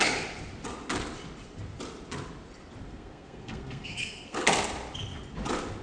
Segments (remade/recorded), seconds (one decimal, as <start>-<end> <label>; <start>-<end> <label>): 0.0-2.8 recorded; 2.8-4.4 remade; 4.4-5.8 recorded